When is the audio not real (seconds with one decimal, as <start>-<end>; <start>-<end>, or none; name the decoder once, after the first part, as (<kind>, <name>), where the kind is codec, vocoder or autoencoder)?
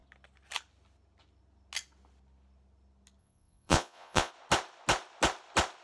3.2-4.3 (vocoder, Vocos)